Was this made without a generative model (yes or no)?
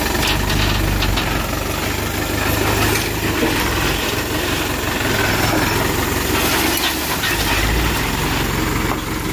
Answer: yes